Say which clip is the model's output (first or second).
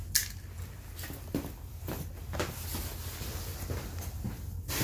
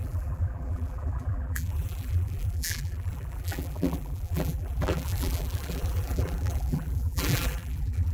second